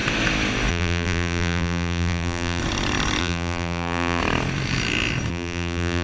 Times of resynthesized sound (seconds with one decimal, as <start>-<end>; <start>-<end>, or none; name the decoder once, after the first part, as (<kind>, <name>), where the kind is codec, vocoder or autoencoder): 0.7-2.6 (vocoder, BigVGAN v2); 3.2-4.2; 5.3-6.0